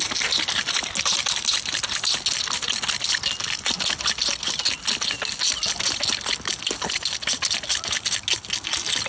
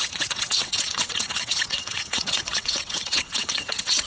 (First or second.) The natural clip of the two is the first